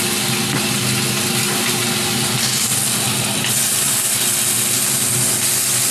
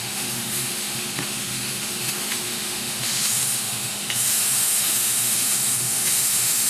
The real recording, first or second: first